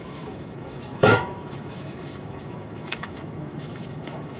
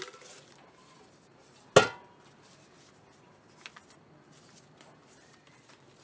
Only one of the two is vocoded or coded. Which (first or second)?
first